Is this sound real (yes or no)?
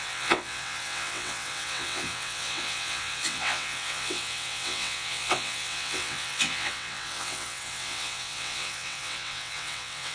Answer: no